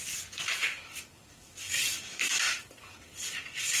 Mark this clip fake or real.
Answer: fake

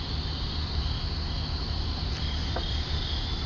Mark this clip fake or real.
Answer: real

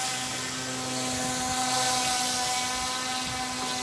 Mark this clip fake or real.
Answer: real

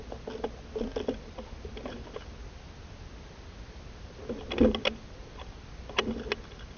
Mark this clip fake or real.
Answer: real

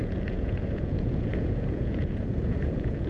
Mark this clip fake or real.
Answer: fake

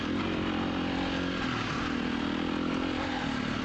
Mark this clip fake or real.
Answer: real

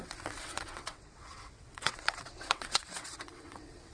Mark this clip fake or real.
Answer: fake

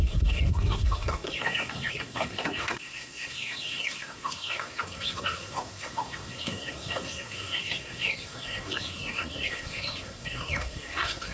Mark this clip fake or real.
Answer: fake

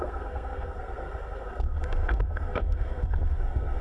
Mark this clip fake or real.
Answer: fake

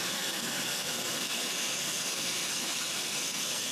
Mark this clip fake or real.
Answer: fake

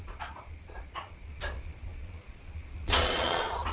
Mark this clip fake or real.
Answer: fake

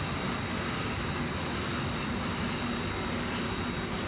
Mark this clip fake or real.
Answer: real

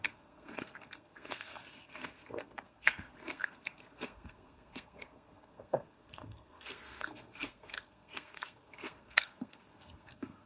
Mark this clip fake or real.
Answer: fake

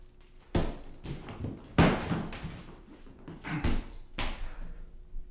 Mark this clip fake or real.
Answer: real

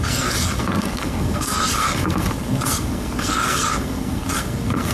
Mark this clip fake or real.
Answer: fake